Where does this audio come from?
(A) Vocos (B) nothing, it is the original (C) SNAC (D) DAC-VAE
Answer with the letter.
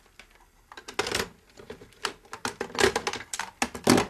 B